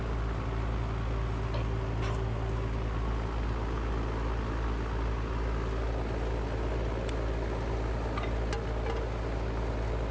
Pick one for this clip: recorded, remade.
recorded